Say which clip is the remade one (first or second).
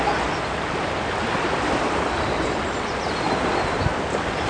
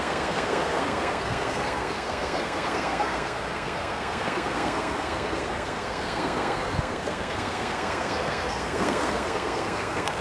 second